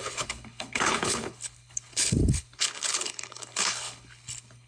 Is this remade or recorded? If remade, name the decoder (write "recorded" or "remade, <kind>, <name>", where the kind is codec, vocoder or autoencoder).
remade, codec, HILCodec